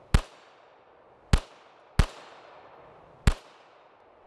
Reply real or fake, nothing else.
real